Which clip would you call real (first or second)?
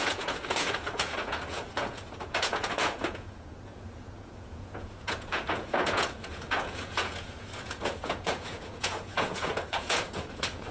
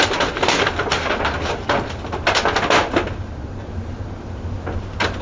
second